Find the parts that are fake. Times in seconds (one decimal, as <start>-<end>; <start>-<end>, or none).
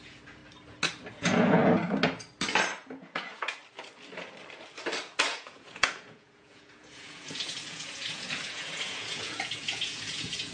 0.0-0.4; 1.1-1.6; 2.8-3.6; 5.3-10.5